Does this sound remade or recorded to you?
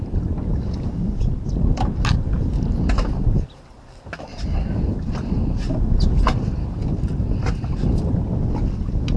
recorded